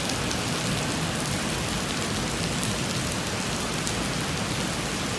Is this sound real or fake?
real